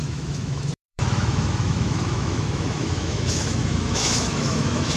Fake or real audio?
fake